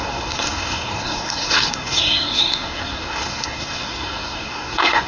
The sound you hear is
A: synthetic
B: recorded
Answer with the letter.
A